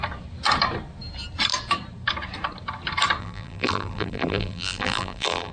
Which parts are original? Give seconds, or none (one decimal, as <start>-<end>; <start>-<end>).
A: 0.0-3.2

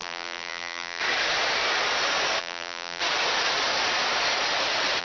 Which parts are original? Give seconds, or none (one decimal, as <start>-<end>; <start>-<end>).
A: 1.0-2.4; 3.0-5.0

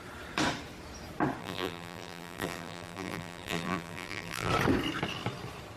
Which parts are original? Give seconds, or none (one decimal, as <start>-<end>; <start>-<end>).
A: 0.0-1.4; 4.5-5.8

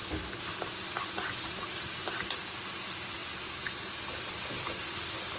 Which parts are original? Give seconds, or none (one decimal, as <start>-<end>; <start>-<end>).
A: 1.9-5.4

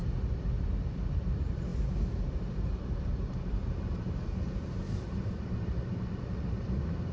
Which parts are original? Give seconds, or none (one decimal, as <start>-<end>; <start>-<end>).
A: 0.0-0.9

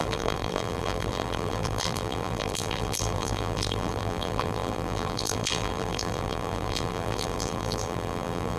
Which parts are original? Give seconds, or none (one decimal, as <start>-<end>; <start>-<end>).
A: none

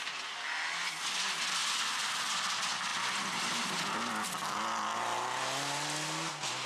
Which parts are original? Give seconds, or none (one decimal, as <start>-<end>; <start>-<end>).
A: 0.0-1.6; 2.3-2.9; 4.1-6.7